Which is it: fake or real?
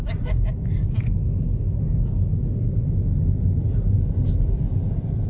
real